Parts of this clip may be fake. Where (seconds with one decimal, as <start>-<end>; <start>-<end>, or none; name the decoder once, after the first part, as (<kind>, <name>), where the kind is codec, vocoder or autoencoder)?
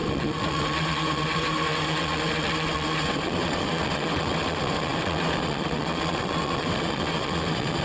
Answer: 0.0-7.8 (vocoder, WaveNeXt)